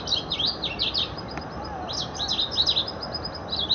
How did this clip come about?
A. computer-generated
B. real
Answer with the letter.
B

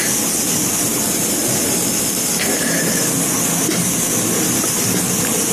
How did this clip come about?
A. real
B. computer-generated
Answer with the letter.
A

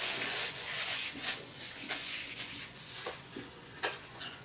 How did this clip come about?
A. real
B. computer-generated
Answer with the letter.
B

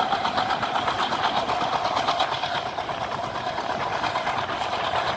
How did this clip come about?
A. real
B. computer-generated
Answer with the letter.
A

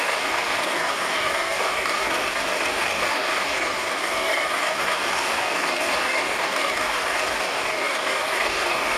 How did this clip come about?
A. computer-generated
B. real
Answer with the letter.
A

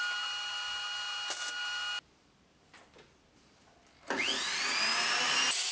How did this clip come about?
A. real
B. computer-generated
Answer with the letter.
A